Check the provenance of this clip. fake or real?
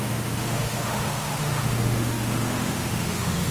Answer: fake